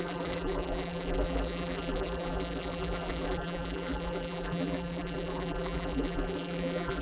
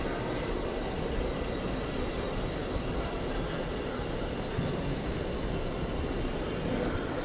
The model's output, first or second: first